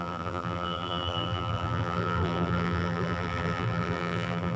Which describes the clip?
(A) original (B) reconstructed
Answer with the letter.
B